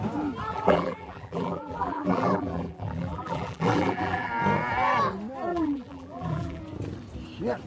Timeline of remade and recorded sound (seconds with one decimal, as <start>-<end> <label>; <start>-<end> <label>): 0.0-0.5 recorded; 0.5-4.3 remade; 4.3-5.5 recorded; 5.5-6.6 remade; 6.6-7.7 recorded